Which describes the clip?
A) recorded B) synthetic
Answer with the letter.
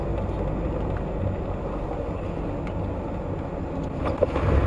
A